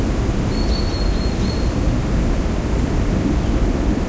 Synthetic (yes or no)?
yes